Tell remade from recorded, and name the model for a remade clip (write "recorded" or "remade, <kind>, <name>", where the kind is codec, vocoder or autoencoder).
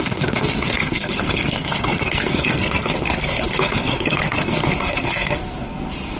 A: remade, codec, SNAC